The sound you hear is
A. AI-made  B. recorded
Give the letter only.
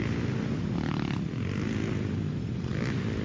B